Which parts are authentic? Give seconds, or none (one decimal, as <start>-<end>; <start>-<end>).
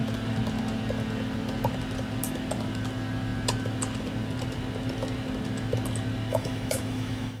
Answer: 0.0-6.3